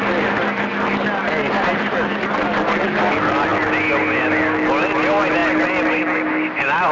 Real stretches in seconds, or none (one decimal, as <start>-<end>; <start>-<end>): 0.0-6.9